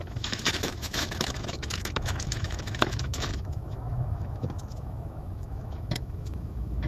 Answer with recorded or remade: remade